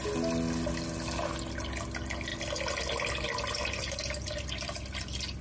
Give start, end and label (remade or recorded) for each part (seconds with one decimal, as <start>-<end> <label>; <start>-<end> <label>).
0.0-5.4 recorded